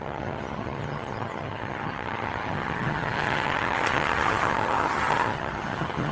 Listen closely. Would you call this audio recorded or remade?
remade